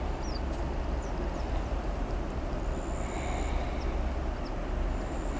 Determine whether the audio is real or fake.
real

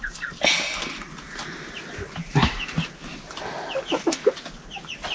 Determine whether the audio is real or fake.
real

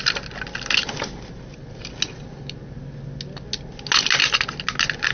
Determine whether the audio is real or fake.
real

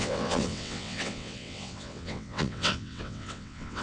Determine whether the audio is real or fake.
fake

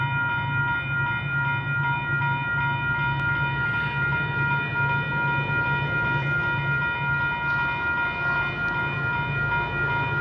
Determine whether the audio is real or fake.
real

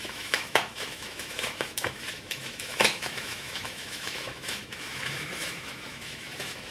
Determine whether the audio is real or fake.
fake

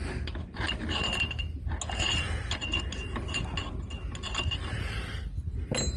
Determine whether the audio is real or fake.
real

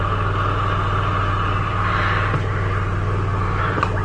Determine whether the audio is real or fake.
real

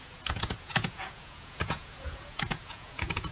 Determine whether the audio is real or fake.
fake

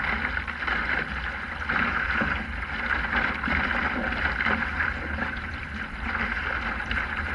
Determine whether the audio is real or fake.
real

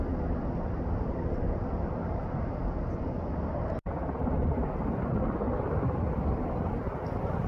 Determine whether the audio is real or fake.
real